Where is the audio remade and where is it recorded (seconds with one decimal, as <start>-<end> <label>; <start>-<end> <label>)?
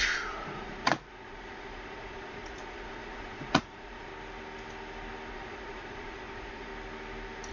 0.0-4.1 remade; 4.1-5.3 recorded; 5.3-6.7 remade; 6.7-7.5 recorded